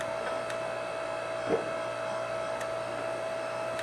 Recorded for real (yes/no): yes